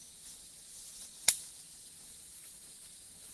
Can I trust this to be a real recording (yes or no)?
no